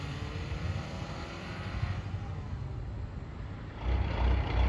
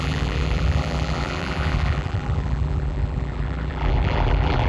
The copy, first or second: second